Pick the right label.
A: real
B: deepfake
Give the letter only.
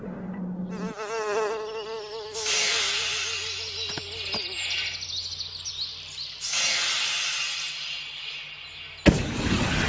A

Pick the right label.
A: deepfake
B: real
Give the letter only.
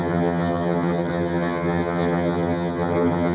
A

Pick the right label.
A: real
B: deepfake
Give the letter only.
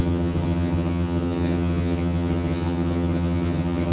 B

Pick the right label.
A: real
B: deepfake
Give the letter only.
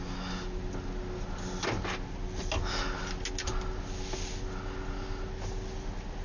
A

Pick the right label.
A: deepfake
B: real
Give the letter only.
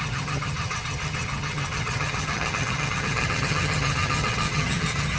A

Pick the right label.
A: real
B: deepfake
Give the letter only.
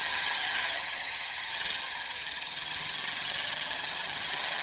B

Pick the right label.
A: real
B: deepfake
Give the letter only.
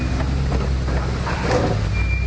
A